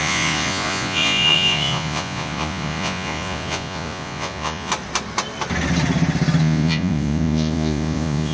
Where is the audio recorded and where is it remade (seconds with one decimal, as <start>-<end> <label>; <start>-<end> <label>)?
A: 0.0-4.7 remade; 4.7-6.4 recorded; 6.4-8.3 remade